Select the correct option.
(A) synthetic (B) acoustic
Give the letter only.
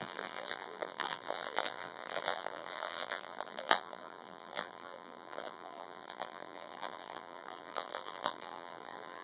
A